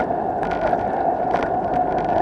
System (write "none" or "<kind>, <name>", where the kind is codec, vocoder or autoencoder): none